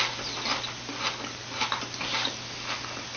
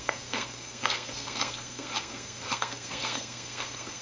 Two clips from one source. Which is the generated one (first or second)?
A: second